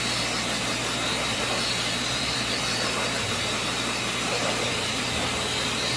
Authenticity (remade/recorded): recorded